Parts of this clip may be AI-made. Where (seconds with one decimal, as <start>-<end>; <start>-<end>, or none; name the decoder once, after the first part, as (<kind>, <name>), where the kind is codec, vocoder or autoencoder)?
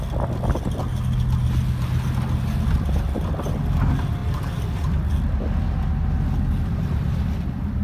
none